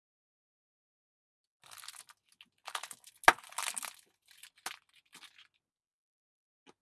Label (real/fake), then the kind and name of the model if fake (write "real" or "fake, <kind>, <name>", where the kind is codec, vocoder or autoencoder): real